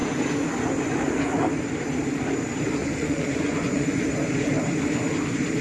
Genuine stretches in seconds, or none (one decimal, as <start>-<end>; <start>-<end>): 0.0-2.8; 4.0-5.6